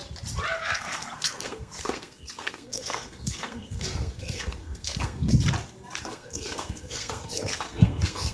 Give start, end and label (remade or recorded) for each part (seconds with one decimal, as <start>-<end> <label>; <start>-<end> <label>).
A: 0.0-0.6 recorded; 0.6-5.3 remade; 5.3-6.0 recorded; 6.0-8.3 remade